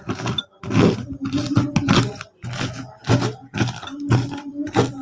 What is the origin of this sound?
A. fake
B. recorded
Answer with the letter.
B